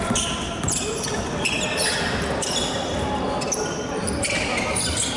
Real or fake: real